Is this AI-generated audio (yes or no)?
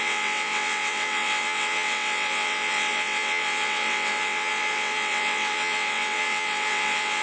yes